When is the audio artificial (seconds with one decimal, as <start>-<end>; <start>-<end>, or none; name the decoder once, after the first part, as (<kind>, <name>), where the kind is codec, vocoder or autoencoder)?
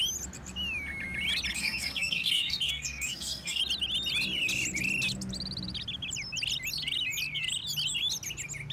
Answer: 1.5-3.6 (codec, SNAC)